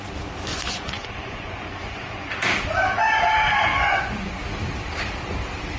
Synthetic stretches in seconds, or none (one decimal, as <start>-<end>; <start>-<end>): 0.5-2.3; 3.7-4.4